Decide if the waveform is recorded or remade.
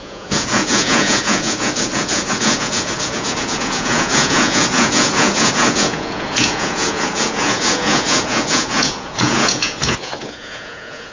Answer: remade